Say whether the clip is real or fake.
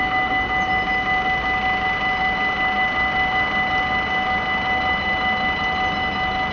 real